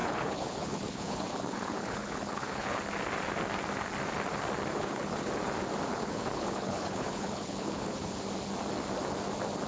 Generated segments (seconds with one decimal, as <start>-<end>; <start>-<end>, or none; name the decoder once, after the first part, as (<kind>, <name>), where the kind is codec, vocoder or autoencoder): 0.0-2.8 (codec, HILCodec); 4.7-5.3; 5.9-8.2